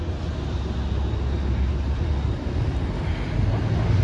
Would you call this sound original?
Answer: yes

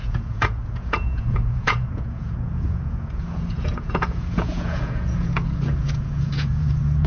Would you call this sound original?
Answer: no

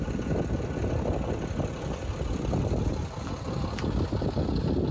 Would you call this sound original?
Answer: yes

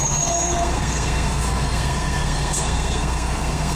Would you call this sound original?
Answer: no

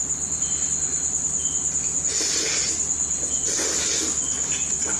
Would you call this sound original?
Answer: yes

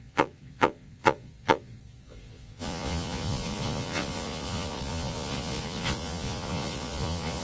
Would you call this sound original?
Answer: no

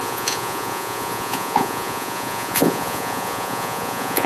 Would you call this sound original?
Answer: no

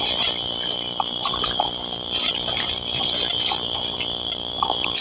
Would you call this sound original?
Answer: no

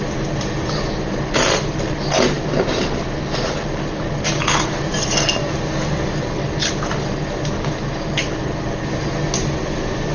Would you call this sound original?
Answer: yes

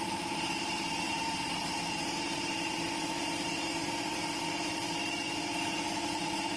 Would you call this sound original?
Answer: no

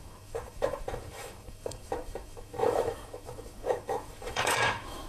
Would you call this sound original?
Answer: no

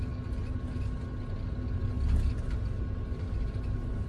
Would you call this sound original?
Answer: yes